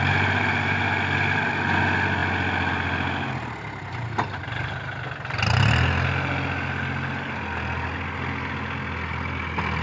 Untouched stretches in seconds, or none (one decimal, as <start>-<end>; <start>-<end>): 0.0-9.8